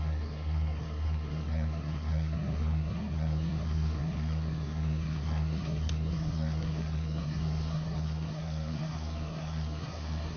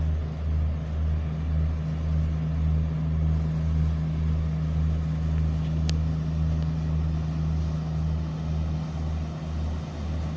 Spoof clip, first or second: first